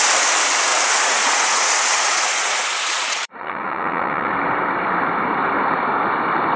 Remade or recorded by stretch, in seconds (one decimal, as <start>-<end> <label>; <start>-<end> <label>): 0.0-0.7 recorded; 0.7-4.3 remade; 4.3-6.6 recorded